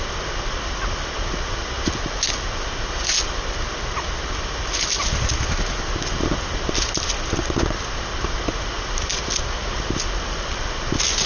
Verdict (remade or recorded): recorded